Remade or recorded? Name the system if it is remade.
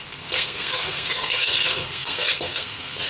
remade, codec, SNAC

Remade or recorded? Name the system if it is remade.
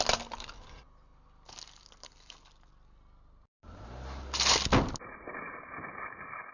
recorded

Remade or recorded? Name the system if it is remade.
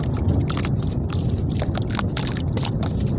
recorded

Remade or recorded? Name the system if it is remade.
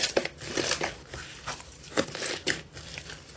recorded